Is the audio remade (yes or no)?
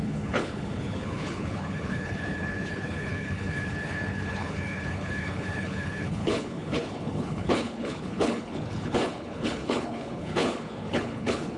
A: yes